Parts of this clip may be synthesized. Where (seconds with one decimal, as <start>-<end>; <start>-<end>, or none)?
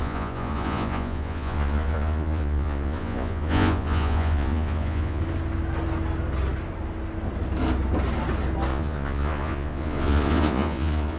0.0-5.2; 8.7-11.2